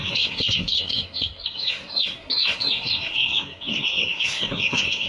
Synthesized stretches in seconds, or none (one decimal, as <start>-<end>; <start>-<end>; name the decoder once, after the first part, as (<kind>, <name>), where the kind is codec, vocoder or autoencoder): 0.0-5.1 (codec, SNAC)